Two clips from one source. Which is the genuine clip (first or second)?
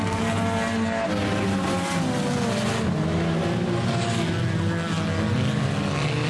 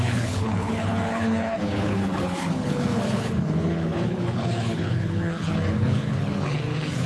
first